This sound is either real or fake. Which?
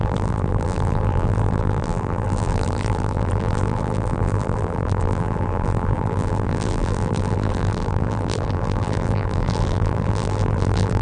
fake